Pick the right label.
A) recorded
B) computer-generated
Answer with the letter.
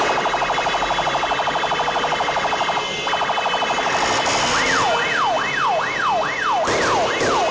A